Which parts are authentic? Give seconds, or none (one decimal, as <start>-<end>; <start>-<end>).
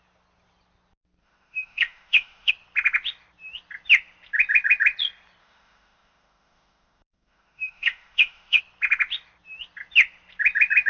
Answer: 0.0-1.2; 2.5-5.4; 8.6-10.9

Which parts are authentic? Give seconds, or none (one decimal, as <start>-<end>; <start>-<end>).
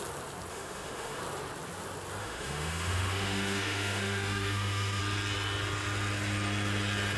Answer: 0.0-0.5; 1.2-2.2; 5.0-7.2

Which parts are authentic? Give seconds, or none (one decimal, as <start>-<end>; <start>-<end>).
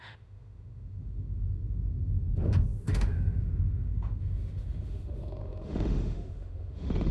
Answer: none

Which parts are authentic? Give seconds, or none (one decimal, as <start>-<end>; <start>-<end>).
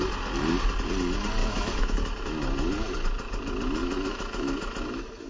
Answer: 0.0-1.4; 2.7-3.8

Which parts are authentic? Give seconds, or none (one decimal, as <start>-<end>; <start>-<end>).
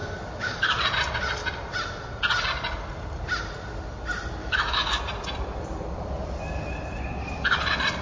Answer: 0.8-4.4; 5.0-8.0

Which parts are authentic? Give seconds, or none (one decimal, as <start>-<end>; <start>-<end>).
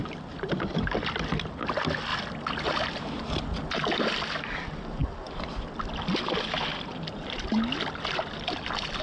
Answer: 0.0-9.0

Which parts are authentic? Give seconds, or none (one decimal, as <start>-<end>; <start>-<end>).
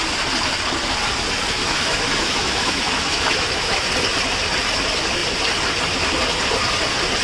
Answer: 0.0-1.6; 3.7-7.2